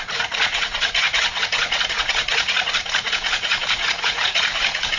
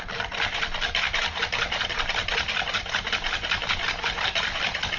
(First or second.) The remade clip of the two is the first